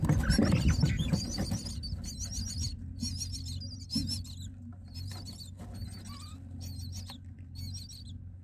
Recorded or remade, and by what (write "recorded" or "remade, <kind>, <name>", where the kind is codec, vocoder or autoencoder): recorded